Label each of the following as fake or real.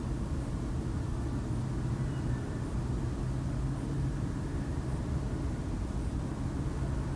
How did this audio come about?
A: real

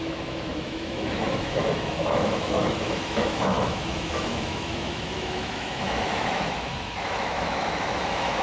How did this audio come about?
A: fake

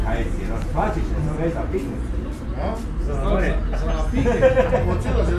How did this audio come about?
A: real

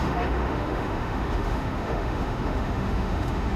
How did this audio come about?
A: fake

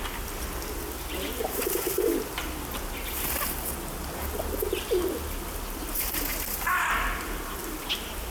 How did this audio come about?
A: real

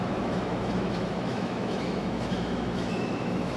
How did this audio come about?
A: fake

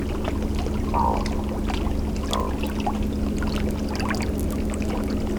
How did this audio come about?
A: real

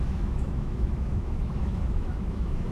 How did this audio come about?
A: fake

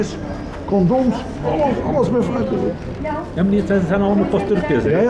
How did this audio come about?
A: real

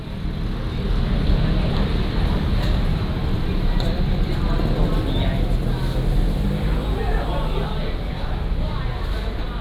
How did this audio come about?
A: real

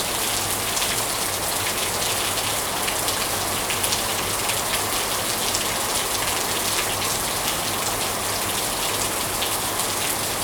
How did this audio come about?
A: real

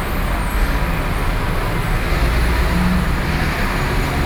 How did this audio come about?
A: real